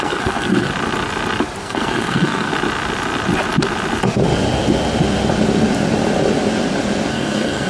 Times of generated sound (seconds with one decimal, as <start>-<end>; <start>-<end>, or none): 0.0-0.7; 1.6-2.5; 7.1-7.7